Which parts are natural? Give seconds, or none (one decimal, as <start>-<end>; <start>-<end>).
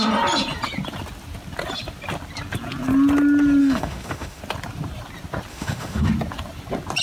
0.0-3.6; 4.4-5.5; 6.1-7.0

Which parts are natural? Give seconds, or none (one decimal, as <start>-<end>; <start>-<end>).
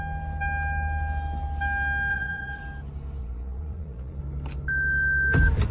0.0-2.1; 2.6-3.2; 4.2-5.7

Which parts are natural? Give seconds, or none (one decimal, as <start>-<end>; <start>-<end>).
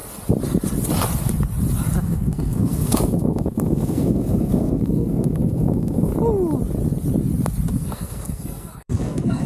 0.0-2.0; 6.1-7.7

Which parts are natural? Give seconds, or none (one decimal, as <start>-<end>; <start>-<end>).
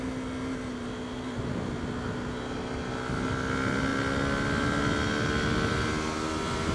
0.0-6.7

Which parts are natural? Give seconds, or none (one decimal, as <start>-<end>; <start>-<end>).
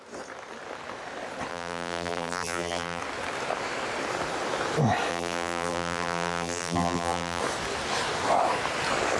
0.0-1.5; 3.0-5.1; 7.4-9.2